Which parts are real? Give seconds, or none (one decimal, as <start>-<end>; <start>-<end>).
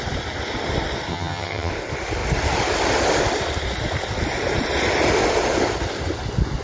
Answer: 0.0-1.1; 1.7-6.6